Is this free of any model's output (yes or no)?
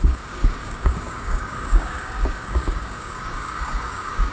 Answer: no